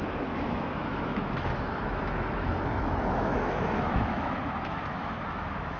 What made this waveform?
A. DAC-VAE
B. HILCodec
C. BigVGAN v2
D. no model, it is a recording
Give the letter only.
A